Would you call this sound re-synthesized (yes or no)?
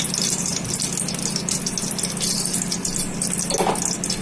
no